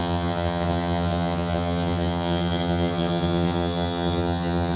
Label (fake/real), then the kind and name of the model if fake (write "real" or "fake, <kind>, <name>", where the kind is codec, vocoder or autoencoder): fake, vocoder, HiFi-GAN